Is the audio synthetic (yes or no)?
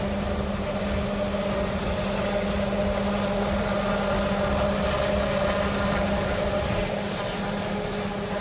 no